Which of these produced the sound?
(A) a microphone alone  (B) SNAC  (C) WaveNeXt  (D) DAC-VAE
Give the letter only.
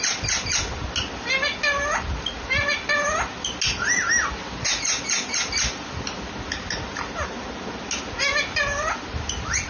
A